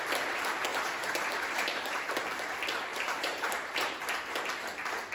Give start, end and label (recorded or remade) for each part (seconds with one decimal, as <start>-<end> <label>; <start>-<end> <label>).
0.0-0.7 recorded; 0.7-2.1 remade; 2.1-2.9 recorded; 2.9-4.0 remade; 4.0-5.1 recorded